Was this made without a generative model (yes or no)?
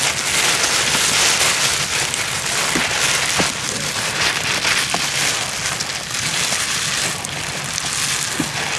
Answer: yes